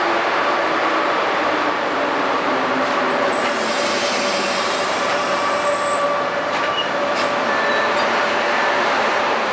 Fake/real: fake